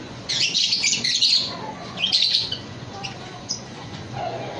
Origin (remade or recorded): remade